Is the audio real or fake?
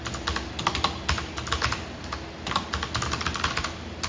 real